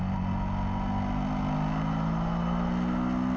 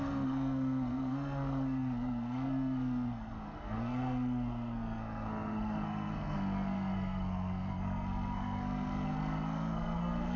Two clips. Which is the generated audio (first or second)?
second